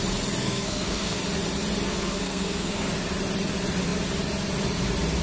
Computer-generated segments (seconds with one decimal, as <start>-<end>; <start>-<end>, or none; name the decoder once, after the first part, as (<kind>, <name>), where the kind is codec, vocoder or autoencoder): 0.4-1.2 (codec, SNAC); 1.9-2.9